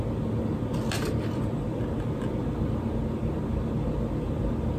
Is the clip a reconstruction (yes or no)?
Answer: no